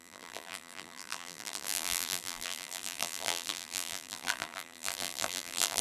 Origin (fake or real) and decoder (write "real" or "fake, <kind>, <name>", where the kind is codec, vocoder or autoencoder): fake, vocoder, BigVGAN v2